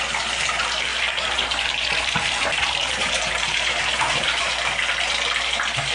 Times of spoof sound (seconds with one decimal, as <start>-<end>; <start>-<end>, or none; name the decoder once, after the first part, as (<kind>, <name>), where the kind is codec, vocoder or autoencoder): 0.9-4.4 (vocoder, BigVGAN v2)